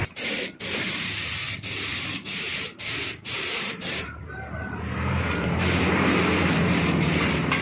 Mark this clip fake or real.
fake